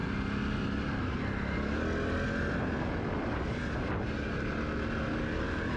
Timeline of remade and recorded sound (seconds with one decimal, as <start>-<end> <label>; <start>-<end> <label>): 0.0-5.8 recorded